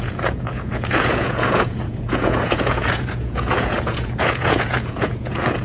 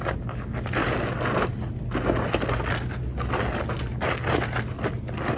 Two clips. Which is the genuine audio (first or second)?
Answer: second